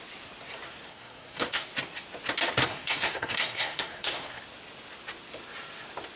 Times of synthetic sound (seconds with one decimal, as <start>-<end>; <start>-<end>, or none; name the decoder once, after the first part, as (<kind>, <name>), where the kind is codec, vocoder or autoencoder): 0.9-1.7 (codec, SNAC); 2.7-4.4